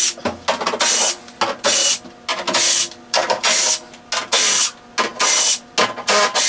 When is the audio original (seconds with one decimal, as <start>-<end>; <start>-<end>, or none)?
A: 0.0-2.3; 3.4-6.5